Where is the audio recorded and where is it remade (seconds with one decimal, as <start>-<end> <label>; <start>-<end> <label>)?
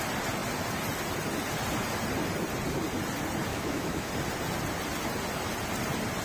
0.0-3.5 recorded; 3.5-4.1 remade; 4.1-6.2 recorded